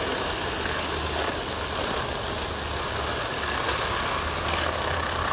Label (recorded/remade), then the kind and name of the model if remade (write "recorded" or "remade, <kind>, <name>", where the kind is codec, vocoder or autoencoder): recorded